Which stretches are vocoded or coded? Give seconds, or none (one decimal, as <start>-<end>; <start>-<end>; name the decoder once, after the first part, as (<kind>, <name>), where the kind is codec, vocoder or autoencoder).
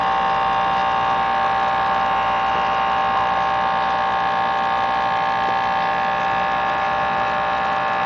none